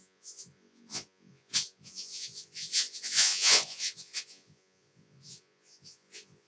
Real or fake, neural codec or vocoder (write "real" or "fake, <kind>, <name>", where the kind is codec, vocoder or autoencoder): fake, vocoder, Vocos